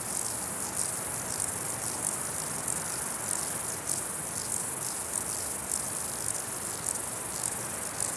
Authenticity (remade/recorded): recorded